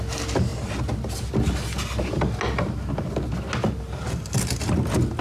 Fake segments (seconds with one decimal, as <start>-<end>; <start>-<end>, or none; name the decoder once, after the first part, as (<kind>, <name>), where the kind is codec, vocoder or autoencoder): none